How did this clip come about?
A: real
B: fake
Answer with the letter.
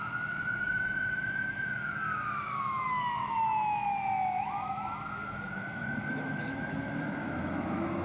B